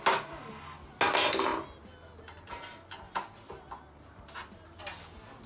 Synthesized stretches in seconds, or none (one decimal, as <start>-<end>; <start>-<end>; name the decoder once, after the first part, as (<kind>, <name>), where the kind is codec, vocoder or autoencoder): none